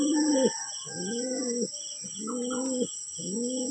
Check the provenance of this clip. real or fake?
real